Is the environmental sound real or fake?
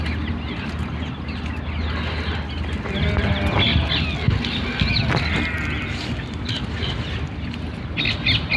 real